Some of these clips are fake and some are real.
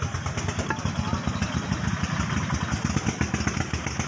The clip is real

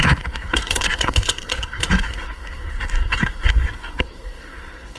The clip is fake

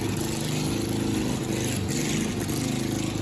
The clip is real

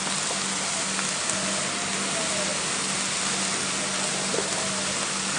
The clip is real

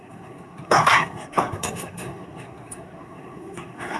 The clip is fake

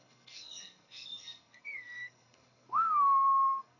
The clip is fake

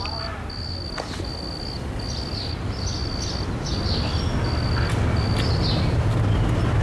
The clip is real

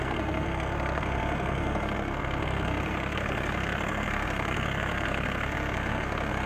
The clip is fake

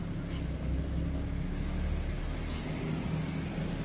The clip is real